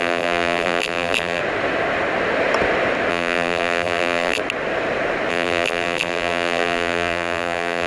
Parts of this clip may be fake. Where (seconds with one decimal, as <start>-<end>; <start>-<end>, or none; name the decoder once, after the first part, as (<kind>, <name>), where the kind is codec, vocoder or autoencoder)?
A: 0.0-1.4 (vocoder, BigVGAN v2); 3.1-4.4; 5.3-7.9